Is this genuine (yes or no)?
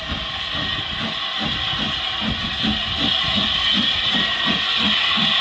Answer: yes